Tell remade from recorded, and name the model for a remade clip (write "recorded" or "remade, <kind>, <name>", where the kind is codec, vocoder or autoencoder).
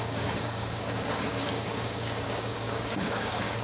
remade, codec, DAC